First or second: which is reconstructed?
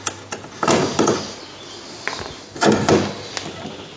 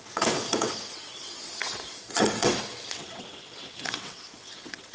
second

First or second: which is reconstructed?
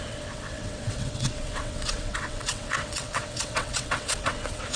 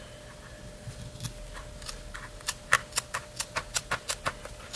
first